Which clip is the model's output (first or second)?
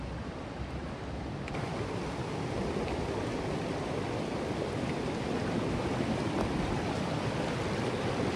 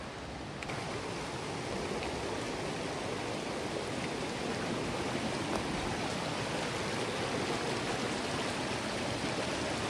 first